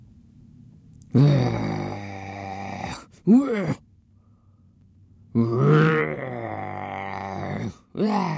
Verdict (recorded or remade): remade